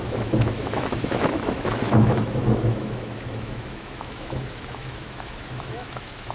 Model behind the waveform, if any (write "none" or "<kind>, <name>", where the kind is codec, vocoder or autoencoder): autoencoder, DAC-VAE